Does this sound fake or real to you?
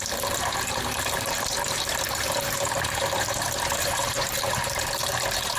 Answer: fake